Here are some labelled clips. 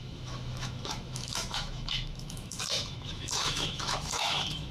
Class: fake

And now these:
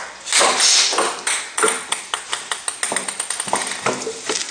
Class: real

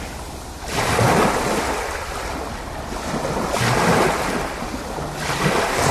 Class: real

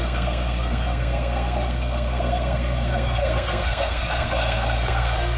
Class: fake